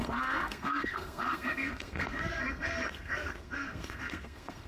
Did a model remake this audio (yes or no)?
yes